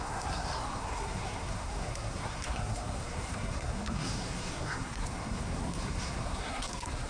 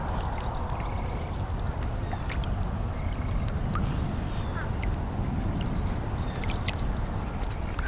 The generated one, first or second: first